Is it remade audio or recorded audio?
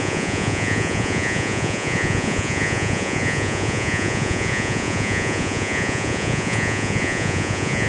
remade